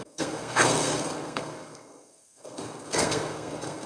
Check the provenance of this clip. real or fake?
fake